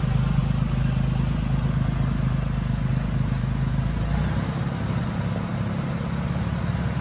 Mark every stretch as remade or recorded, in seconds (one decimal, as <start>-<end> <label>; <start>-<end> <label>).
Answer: 0.0-7.0 recorded